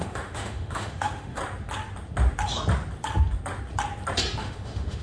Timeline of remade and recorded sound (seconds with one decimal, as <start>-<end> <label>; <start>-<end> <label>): 0.0-1.4 remade; 1.4-4.4 recorded; 4.4-5.0 remade